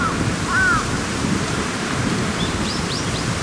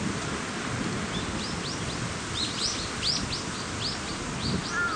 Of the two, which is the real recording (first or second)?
second